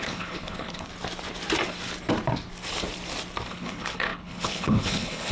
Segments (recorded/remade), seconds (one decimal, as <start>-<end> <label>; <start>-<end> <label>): 0.0-0.9 remade; 0.9-3.5 recorded; 3.5-5.3 remade